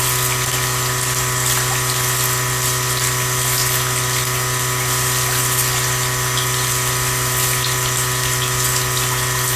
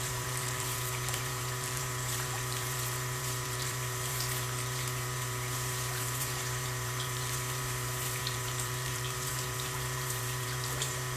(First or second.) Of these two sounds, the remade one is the second